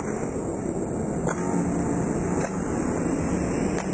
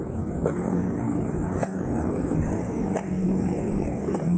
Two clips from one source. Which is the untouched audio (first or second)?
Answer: first